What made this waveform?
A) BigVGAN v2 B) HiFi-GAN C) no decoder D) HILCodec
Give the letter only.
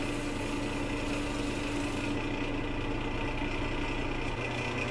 C